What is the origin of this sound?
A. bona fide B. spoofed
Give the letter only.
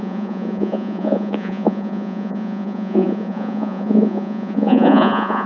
B